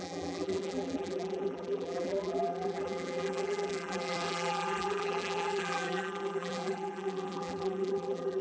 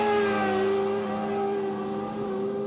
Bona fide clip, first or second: second